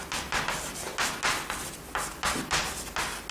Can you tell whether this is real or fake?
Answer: real